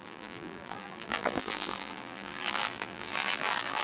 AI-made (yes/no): yes